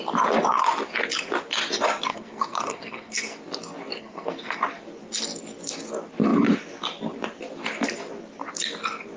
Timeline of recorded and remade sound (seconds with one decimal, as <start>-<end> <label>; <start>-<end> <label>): 0.0-2.1 recorded; 2.1-3.4 remade; 3.4-4.0 recorded; 4.0-4.6 remade; 4.6-9.2 recorded